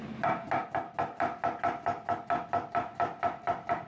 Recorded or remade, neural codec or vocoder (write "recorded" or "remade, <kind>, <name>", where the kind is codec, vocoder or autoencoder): recorded